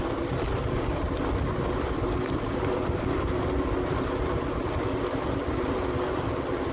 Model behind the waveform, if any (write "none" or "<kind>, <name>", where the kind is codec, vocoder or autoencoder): none